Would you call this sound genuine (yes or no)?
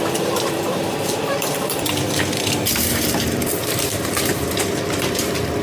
no